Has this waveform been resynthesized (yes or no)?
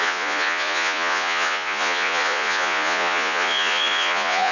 yes